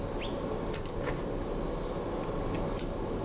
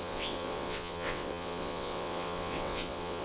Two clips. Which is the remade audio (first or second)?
second